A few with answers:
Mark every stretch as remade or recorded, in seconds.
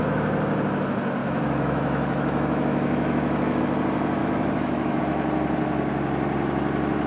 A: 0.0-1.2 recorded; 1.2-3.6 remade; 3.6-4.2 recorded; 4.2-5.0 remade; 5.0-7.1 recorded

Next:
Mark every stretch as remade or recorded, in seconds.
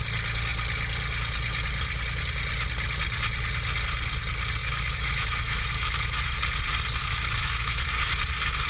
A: 0.0-4.6 recorded; 4.6-6.3 remade; 6.3-7.0 recorded; 7.0-7.9 remade; 7.9-8.7 recorded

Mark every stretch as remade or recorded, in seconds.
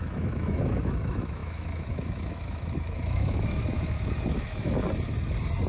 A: 0.0-4.8 remade; 4.8-5.7 recorded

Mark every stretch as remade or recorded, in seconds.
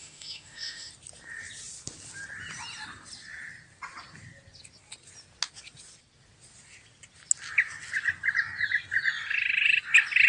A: 0.0-0.9 remade; 0.9-10.3 recorded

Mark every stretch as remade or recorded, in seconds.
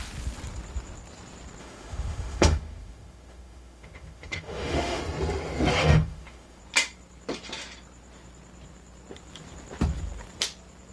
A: 0.0-1.6 recorded; 1.6-5.0 remade; 5.0-5.8 recorded; 5.8-6.6 remade; 6.6-10.9 recorded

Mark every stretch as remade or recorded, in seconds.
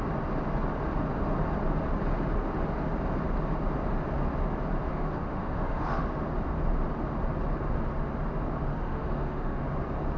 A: 0.0-4.9 recorded; 4.9-6.0 remade; 6.0-8.7 recorded; 8.7-9.6 remade; 9.6-10.2 recorded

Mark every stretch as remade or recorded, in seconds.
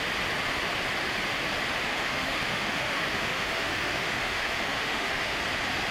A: 0.0-1.9 recorded; 1.9-5.4 remade; 5.4-5.9 recorded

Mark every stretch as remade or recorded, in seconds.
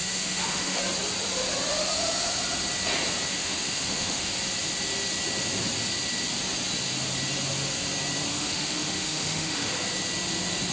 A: 0.0-0.8 remade; 0.8-3.3 recorded; 3.3-4.3 remade; 4.3-8.3 recorded; 8.3-9.7 remade; 9.7-10.7 recorded